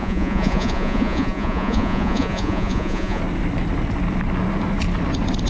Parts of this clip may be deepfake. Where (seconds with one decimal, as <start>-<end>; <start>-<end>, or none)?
0.0-3.2